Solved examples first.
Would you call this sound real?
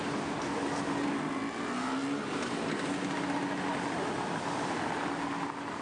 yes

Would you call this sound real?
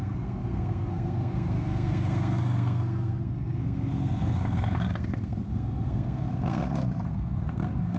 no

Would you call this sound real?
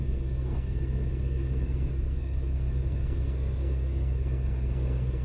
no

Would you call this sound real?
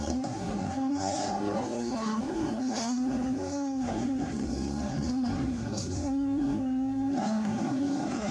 no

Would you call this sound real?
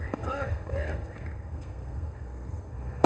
no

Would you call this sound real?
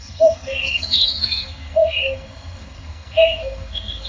no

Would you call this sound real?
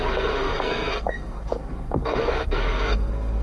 no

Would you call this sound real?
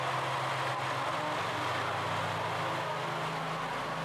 yes